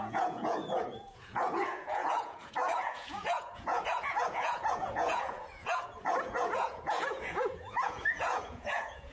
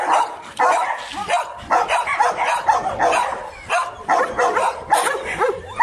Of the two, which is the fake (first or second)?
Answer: first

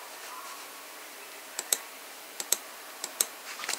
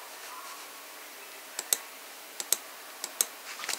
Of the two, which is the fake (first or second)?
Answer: first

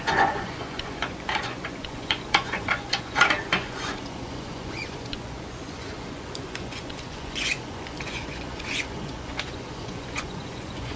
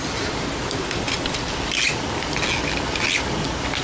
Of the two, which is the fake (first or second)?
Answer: first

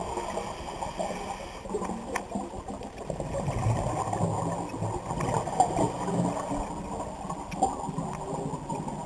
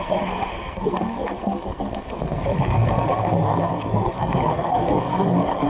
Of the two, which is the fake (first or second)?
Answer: second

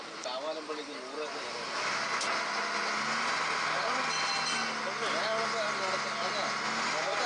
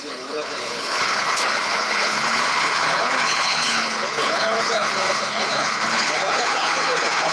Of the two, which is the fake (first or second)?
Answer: second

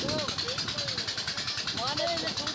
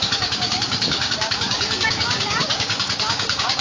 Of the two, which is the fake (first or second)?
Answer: second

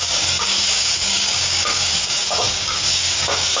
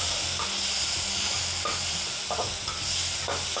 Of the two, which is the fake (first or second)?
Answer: first